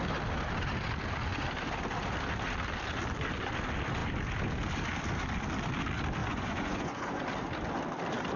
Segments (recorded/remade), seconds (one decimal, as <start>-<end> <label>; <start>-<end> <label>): 0.0-6.2 recorded; 6.2-7.2 remade; 7.2-8.4 recorded